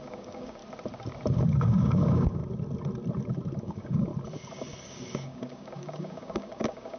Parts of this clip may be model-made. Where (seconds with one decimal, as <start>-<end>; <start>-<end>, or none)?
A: 0.0-0.6; 1.4-2.4; 3.6-4.1; 4.8-7.0